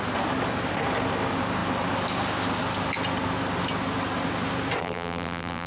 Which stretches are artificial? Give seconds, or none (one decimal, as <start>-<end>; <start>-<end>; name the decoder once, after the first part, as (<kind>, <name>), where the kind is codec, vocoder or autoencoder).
4.8-5.7 (vocoder, BigVGAN v2)